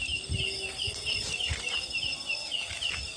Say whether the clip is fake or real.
real